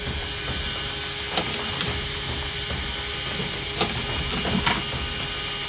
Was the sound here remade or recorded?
recorded